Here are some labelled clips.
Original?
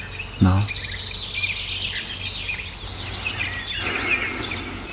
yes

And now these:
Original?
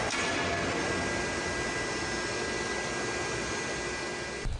yes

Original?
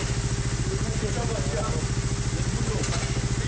yes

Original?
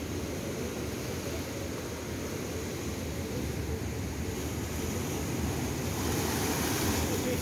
yes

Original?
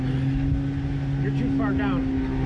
yes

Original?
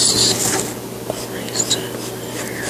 yes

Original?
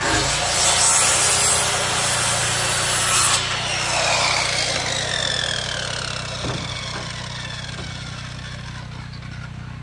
yes